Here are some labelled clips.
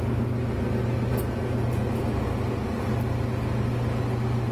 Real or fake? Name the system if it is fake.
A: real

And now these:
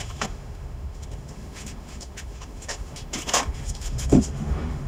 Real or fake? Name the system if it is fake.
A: fake, autoencoder, DAC-VAE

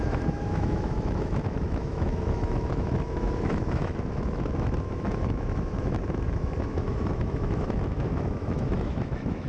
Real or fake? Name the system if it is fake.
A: fake, autoencoder, DAC-VAE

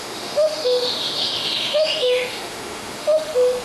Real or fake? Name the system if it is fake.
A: fake, autoencoder, DAC-VAE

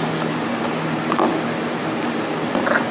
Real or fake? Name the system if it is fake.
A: real